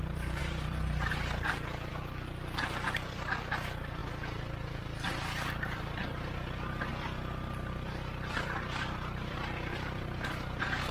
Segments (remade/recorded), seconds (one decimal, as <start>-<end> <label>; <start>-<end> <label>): 0.0-1.9 remade; 1.9-2.6 recorded; 2.6-10.9 remade